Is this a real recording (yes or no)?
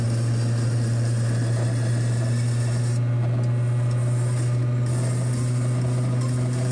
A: yes